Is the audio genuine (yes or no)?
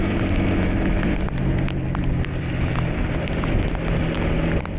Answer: yes